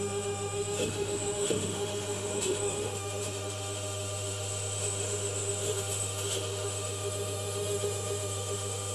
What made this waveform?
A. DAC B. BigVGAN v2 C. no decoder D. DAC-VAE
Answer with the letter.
D